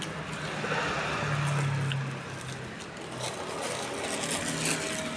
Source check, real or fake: real